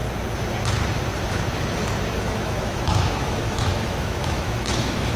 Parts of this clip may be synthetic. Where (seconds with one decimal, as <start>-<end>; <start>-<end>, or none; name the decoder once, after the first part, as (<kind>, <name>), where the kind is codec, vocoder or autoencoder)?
2.2-5.2 (autoencoder, DAC-VAE)